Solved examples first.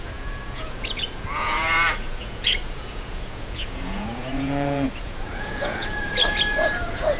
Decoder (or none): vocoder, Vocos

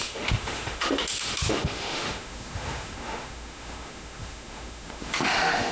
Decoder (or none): autoencoder, DAC-VAE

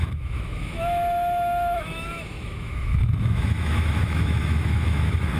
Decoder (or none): autoencoder, DAC-VAE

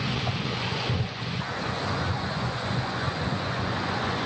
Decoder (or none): vocoder, Vocos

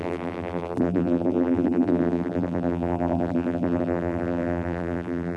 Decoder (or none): vocoder, BigVGAN v2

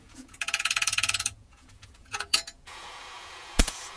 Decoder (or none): vocoder, Vocos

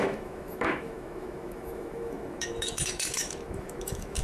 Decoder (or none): autoencoder, DAC-VAE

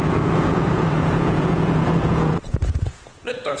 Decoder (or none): vocoder, Vocos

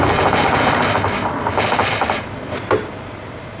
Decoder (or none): none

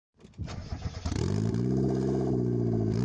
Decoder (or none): none